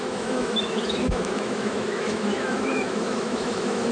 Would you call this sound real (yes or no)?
no